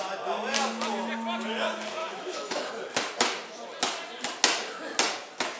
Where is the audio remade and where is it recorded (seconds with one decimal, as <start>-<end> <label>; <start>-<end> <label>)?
0.0-2.0 recorded; 2.0-2.7 remade; 2.7-5.6 recorded